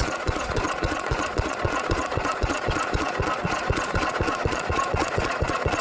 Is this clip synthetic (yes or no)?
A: yes